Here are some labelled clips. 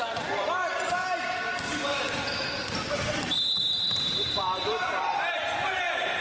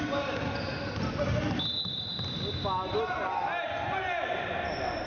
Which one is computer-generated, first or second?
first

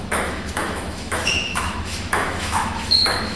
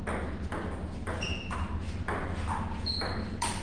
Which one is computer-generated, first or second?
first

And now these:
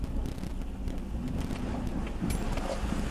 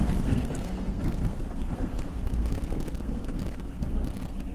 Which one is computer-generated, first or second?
second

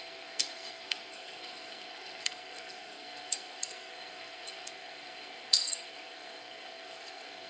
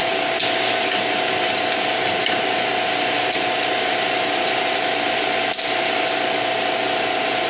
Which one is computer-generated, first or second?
first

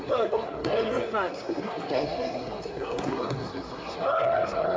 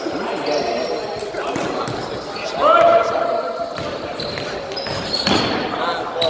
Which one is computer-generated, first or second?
first